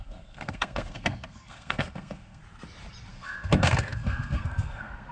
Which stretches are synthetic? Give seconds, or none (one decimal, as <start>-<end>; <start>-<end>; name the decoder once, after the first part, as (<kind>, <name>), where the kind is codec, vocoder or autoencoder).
0.0-2.4 (codec, SNAC); 3.1-5.1